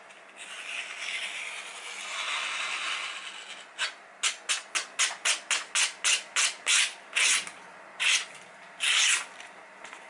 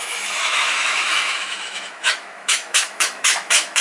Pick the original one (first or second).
first